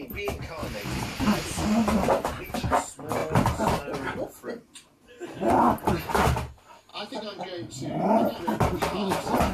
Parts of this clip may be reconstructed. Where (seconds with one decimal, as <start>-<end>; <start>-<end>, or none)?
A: 0.6-2.4; 6.9-8.4